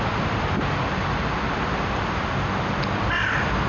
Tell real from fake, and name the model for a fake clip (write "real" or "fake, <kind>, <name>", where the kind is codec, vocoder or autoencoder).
real